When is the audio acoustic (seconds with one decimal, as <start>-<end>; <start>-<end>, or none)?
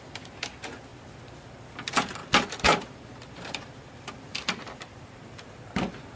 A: 0.0-0.9; 1.5-2.2